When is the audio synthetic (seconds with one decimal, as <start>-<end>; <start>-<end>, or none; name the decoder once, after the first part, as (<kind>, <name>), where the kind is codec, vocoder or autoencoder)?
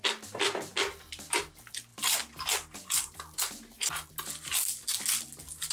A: none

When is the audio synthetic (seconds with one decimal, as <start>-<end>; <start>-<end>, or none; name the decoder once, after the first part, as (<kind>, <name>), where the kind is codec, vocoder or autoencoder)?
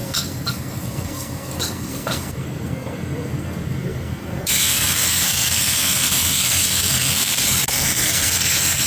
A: 0.0-8.9 (codec, SNAC)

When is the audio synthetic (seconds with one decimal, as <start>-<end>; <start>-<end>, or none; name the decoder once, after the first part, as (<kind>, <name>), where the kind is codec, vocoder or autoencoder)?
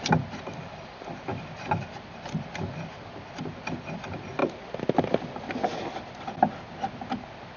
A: none